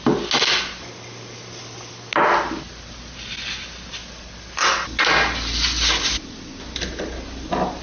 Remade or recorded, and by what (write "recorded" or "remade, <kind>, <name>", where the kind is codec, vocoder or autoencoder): recorded